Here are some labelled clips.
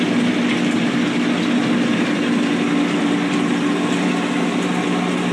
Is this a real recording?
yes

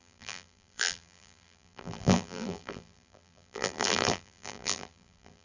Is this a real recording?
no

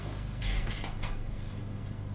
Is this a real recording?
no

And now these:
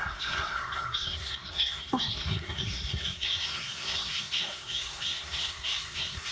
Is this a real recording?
no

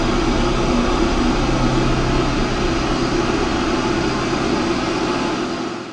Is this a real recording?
yes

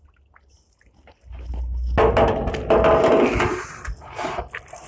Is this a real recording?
yes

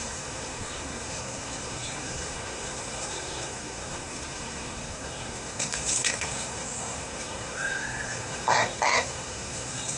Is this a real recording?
no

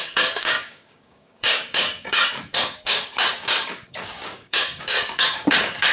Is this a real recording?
no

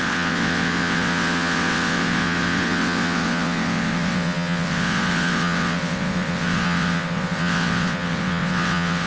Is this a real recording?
no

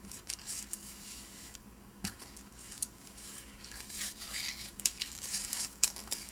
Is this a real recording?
no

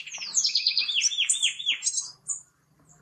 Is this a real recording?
no